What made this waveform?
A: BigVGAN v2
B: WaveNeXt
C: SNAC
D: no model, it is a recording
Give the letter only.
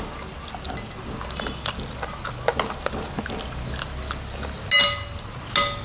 D